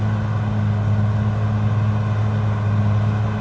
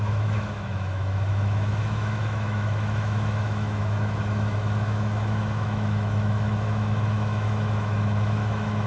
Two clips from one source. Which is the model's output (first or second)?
second